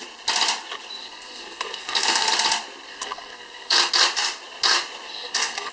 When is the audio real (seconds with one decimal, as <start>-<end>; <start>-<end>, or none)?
0.0-1.0; 2.3-2.9; 3.9-5.1